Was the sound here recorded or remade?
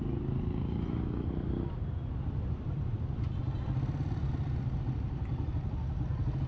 recorded